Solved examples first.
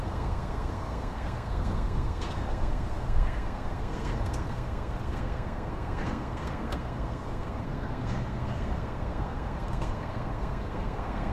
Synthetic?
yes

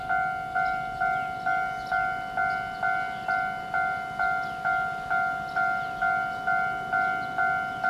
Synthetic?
no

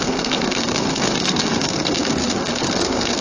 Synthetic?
yes